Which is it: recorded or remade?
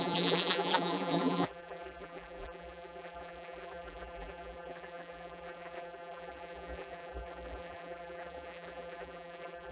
remade